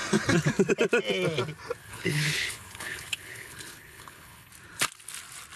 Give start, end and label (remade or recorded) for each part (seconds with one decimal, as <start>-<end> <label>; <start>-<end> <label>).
0.0-1.8 recorded; 1.8-4.5 remade; 4.5-5.6 recorded